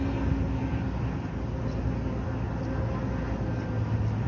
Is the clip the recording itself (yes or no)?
yes